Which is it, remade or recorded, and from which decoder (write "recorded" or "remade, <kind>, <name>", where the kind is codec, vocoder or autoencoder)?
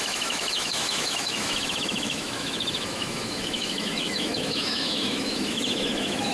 remade, autoencoder, DAC-VAE